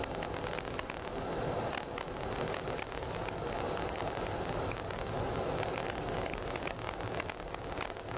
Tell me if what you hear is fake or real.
real